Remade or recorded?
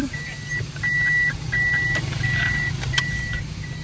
recorded